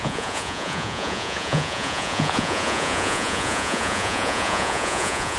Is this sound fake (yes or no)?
yes